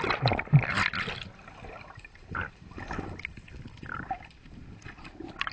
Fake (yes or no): no